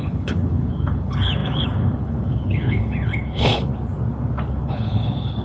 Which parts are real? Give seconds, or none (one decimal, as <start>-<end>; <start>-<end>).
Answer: 3.7-4.5